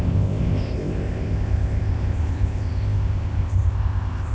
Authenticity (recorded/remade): remade